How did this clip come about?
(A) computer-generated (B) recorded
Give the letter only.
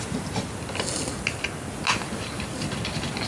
B